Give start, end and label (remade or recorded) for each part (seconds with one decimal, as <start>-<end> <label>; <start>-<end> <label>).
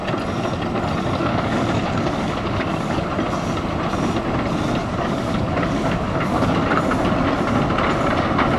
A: 0.0-1.2 recorded; 1.2-3.1 remade; 3.1-4.8 recorded; 4.8-6.8 remade; 6.8-8.6 recorded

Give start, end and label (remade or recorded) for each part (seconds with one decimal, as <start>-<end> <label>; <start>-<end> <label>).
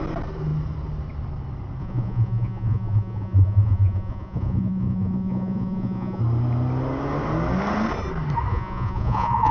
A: 0.0-1.8 recorded; 1.8-6.2 remade; 6.2-8.5 recorded; 8.5-9.5 remade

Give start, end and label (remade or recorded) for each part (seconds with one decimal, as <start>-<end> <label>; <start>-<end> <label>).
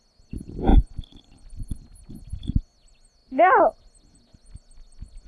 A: 0.0-5.3 recorded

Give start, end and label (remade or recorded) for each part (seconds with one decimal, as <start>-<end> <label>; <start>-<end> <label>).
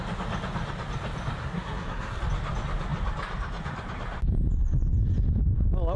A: 0.0-1.4 recorded; 1.4-2.2 remade; 2.2-6.0 recorded